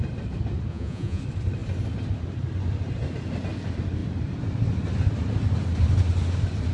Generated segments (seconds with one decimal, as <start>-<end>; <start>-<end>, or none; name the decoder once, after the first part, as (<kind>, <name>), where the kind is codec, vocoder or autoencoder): 0.7-1.2 (vocoder, Vocos)